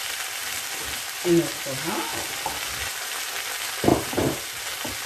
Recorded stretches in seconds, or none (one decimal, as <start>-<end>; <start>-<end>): 0.0-3.9; 4.6-5.1